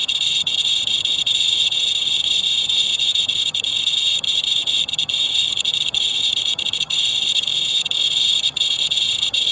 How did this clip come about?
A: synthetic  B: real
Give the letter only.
A